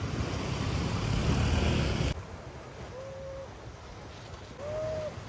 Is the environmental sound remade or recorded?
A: recorded